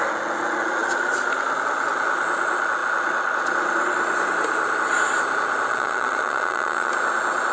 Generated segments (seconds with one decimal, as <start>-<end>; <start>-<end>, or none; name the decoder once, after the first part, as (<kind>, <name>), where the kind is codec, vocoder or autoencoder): 5.7-6.9 (vocoder, Vocos)